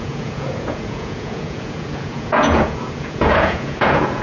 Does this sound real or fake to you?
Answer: fake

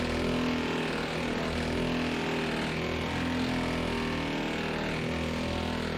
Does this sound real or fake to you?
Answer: real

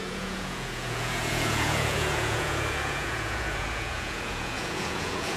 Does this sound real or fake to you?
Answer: fake